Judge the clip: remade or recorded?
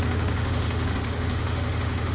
remade